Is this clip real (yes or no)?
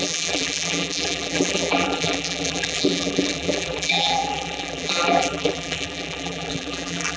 no